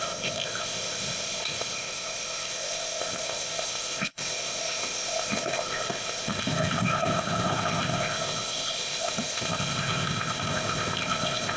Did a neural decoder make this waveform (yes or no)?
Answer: yes